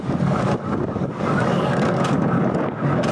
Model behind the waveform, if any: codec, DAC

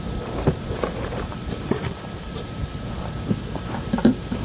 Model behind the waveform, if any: vocoder, BigVGAN v2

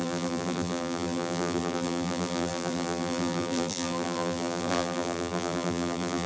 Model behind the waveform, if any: vocoder, BigVGAN v2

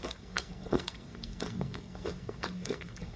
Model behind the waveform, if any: codec, SNAC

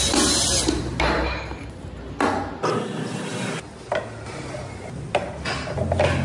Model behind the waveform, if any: none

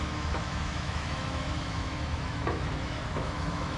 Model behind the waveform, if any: autoencoder, DAC-VAE